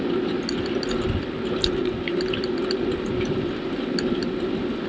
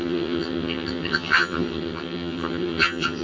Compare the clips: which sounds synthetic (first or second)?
second